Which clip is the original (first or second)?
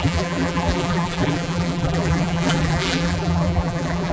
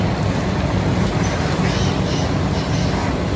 second